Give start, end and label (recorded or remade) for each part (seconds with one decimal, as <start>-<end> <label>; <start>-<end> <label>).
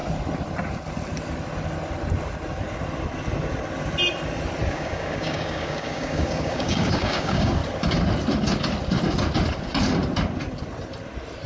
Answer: 0.0-4.7 recorded; 4.7-7.6 remade; 7.6-11.5 recorded